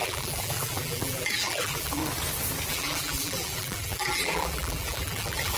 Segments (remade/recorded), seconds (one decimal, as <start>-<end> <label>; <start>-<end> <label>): 0.0-2.0 remade; 2.0-2.7 recorded; 2.7-5.6 remade